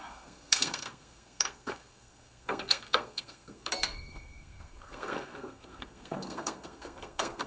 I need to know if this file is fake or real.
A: fake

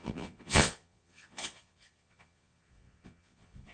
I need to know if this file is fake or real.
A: fake